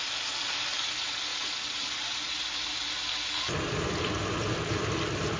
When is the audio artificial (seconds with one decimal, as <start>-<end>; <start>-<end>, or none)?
0.0-5.4